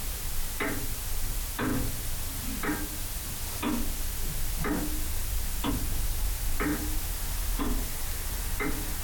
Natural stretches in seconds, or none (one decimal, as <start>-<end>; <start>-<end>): 0.0-9.0